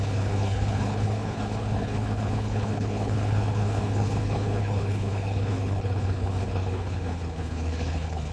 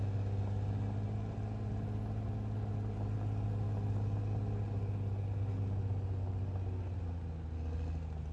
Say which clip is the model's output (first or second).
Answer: first